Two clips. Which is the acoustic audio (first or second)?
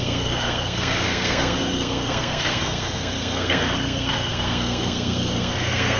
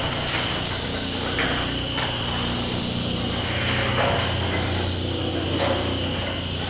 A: second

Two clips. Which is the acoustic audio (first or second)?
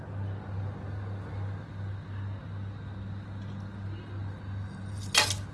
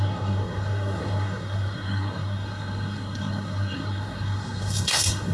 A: first